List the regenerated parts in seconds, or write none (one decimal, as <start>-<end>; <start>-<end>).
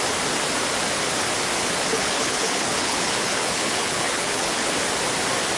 1.9-4.7